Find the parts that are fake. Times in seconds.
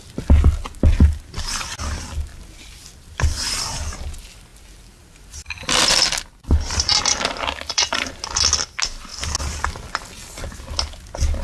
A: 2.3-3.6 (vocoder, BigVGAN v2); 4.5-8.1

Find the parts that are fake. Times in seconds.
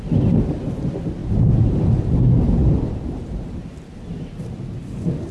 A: 1.2-1.8 (vocoder, BigVGAN v2); 2.6-5.3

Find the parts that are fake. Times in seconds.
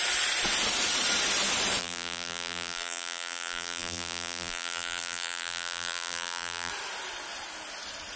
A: 1.8-6.7 (vocoder, BigVGAN v2)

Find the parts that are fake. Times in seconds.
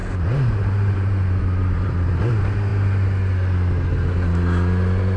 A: 0.0-2.1 (vocoder, BigVGAN v2)